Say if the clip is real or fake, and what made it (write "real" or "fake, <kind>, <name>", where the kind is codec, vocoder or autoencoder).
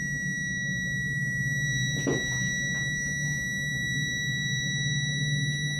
real